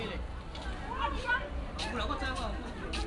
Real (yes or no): yes